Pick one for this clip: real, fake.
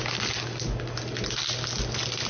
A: real